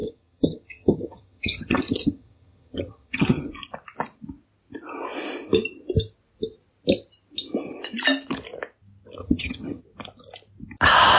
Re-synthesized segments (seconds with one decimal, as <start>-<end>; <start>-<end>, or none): 0.0-3.5; 9.2-9.8